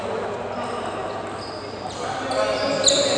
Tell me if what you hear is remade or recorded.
recorded